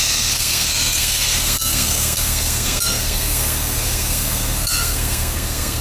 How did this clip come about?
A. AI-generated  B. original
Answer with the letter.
A